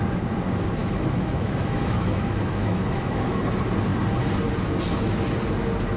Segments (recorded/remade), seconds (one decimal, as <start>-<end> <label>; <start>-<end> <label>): 0.0-0.8 recorded; 0.8-3.4 remade; 3.4-6.0 recorded